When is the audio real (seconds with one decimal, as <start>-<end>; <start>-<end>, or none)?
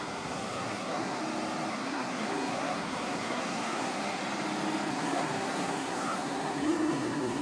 1.2-1.7; 4.2-4.9